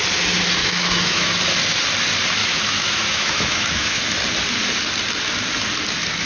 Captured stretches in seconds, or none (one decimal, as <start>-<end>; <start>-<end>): 0.0-0.6; 1.3-2.4; 4.0-6.3